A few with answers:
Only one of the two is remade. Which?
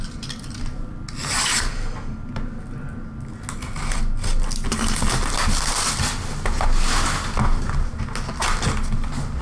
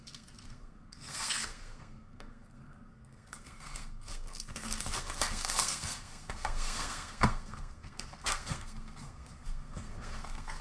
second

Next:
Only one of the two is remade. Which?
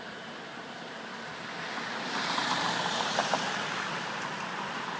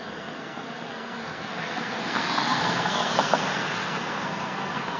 second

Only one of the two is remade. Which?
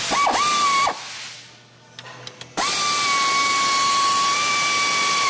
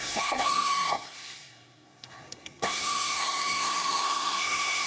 second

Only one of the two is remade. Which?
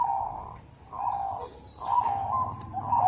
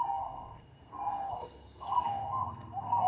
second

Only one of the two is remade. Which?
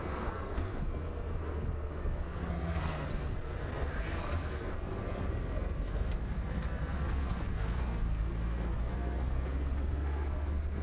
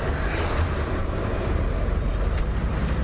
first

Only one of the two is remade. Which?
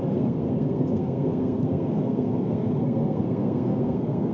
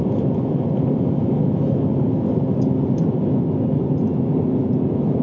first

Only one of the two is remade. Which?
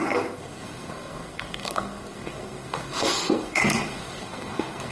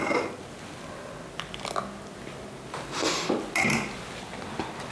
first